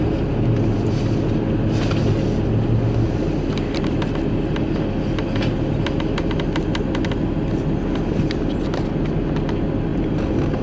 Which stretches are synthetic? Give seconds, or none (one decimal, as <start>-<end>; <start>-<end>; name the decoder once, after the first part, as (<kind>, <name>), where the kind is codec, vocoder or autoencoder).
9.9-10.6 (vocoder, BigVGAN v2)